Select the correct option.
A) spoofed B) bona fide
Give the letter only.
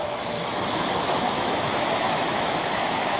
A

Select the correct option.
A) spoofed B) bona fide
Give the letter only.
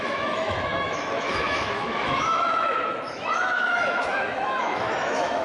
A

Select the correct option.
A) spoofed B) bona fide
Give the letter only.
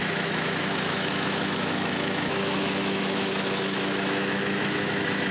A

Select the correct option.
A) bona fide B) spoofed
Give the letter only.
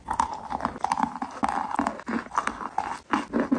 A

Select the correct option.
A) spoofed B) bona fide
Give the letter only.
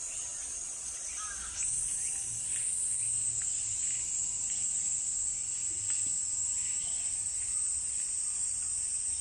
B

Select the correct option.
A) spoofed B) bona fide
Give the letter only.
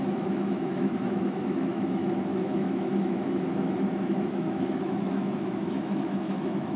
A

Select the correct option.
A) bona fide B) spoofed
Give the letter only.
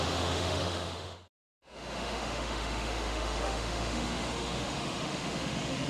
B